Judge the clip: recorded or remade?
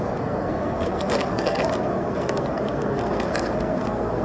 remade